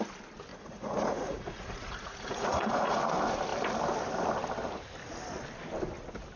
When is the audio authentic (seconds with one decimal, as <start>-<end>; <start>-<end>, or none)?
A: 0.0-0.5; 3.0-6.4